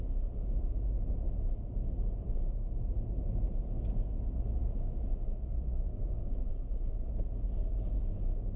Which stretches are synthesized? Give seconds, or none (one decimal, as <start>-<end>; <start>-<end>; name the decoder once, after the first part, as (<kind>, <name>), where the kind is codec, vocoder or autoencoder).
4.6-5.5 (autoencoder, DAC-VAE); 5.9-6.5